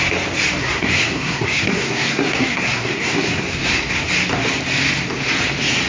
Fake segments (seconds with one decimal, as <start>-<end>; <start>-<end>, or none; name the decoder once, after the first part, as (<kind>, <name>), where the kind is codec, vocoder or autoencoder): 0.6-4.1 (codec, SNAC)